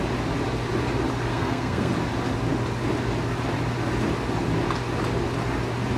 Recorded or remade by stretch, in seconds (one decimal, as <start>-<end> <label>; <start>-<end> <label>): 0.0-1.3 recorded; 1.3-1.9 remade; 1.9-6.0 recorded